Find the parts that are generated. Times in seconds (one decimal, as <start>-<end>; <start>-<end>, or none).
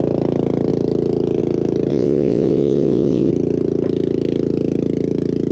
1.9-3.3